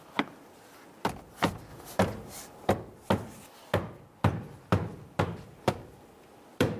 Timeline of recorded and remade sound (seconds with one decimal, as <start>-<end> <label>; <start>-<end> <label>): 0.0-6.8 recorded